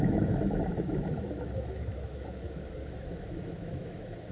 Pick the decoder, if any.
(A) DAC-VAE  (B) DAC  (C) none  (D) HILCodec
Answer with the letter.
A